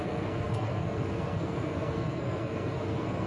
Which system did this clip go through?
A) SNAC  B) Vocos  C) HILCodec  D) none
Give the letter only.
A